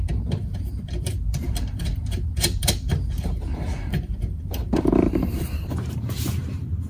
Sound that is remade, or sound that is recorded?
remade